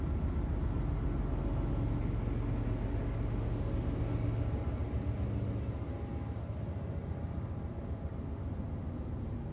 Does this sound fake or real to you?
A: real